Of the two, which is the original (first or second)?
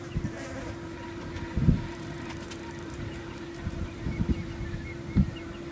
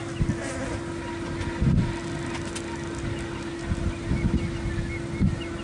second